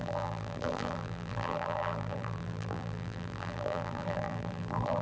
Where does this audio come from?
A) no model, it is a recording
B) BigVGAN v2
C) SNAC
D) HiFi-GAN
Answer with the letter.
B